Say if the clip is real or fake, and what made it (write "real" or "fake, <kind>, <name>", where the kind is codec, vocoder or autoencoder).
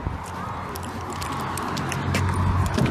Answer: real